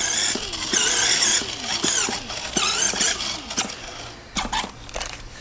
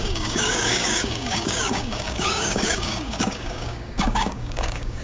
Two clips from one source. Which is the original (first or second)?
first